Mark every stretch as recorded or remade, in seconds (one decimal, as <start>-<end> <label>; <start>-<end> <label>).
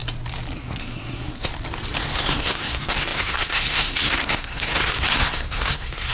0.0-0.6 recorded; 0.6-1.5 remade; 1.5-2.0 recorded; 2.0-6.1 remade